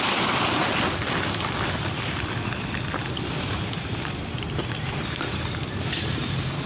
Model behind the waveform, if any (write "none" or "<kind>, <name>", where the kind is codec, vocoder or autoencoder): vocoder, BigVGAN v2